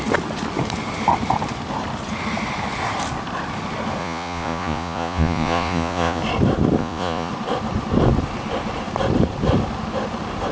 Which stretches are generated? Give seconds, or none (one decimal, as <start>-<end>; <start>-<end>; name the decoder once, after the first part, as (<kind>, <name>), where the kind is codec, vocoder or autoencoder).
4.0-6.2 (vocoder, Vocos); 6.8-7.3